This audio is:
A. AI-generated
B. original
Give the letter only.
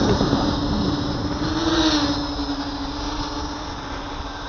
B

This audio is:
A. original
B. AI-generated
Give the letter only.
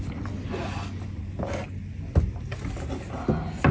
A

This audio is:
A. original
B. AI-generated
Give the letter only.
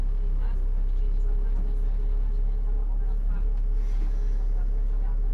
A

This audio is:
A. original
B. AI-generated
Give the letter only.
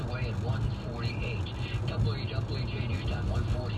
A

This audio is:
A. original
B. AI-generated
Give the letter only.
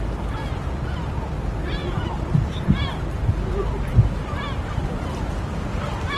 A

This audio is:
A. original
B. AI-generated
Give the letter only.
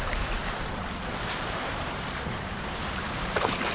B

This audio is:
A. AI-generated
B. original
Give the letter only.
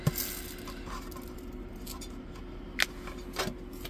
B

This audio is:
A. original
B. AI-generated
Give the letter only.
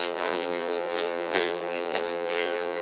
B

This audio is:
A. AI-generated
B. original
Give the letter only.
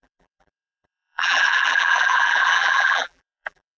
A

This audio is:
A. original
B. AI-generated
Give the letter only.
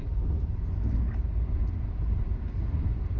A